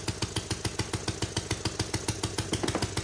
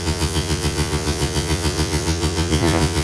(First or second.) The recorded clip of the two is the first